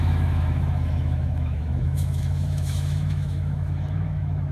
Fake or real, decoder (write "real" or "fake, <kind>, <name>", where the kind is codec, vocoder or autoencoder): fake, autoencoder, DAC-VAE